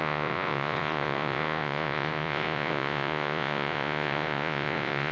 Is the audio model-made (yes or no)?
yes